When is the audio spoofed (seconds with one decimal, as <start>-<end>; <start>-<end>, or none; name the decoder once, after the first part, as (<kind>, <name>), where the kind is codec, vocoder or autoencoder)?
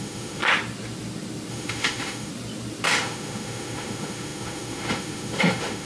0.0-0.4 (autoencoder, DAC-VAE); 1.5-2.3; 2.9-5.9